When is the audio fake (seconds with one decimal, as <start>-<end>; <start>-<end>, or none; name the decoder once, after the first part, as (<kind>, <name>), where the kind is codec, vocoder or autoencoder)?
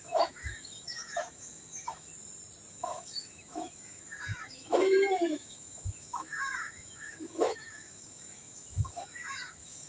0.0-2.1 (autoencoder, DAC-VAE); 2.7-9.9